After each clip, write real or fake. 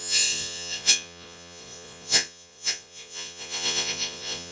fake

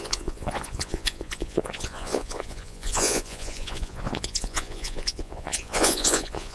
fake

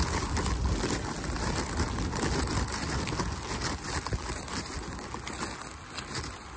real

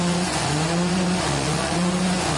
fake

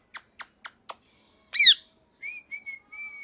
real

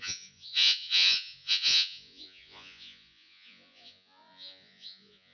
fake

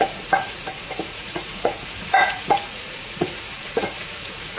fake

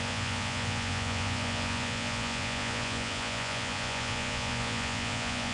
fake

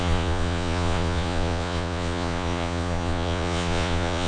fake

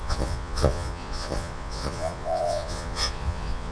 fake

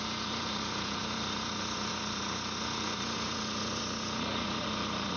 fake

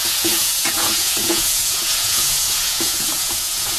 fake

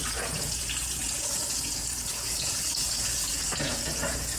fake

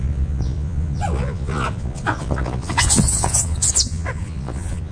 fake